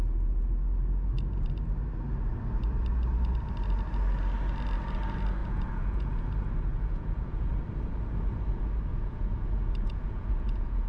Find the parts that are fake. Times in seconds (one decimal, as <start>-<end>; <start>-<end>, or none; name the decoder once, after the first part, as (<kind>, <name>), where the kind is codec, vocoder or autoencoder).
5.4-6.2 (vocoder, Vocos); 6.7-7.5; 8.9-10.9